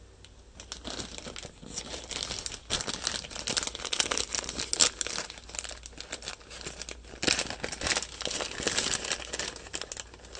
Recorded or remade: recorded